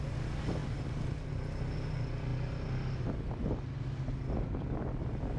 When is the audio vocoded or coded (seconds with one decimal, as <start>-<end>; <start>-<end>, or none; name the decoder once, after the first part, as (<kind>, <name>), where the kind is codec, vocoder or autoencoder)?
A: none

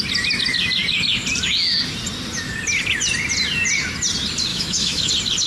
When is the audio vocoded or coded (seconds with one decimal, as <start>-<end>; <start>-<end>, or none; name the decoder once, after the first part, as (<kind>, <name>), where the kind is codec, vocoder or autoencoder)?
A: 4.5-5.1 (autoencoder, DAC-VAE)